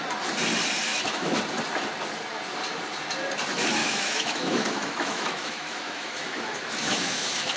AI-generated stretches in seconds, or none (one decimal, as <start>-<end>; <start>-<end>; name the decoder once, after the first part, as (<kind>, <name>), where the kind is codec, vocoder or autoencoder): 0.9-1.4 (autoencoder, DAC-VAE); 3.8-7.6